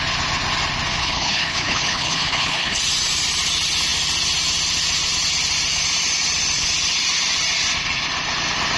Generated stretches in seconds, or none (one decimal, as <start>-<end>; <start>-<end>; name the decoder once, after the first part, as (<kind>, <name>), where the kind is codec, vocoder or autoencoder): 1.0-2.8 (codec, HILCodec)